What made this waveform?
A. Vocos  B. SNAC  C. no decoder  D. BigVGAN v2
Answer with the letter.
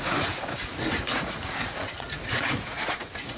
A